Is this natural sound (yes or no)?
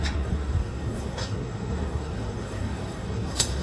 no